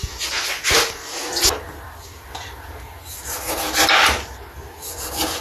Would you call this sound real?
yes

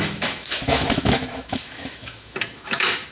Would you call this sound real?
no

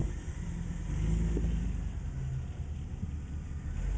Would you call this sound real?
yes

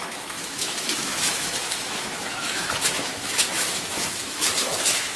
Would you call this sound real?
no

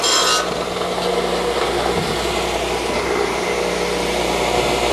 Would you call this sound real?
yes